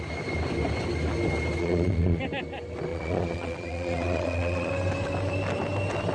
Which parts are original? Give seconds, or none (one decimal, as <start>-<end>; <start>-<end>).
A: 0.0-1.6; 2.2-2.9; 4.7-6.1